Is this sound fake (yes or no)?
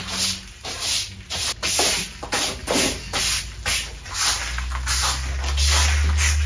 no